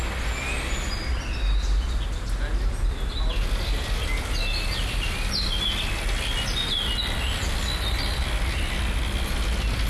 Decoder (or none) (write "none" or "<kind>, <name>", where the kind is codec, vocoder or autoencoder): none